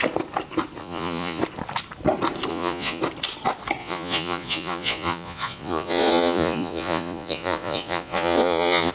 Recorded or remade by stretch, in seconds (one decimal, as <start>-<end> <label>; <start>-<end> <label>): 0.0-0.8 recorded; 0.8-1.4 remade; 1.4-2.5 recorded; 2.5-3.0 remade; 3.0-3.8 recorded; 3.8-8.9 remade